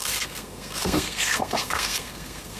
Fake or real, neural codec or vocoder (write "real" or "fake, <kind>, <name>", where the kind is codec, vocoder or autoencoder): fake, codec, SNAC